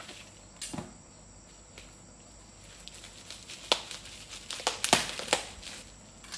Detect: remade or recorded recorded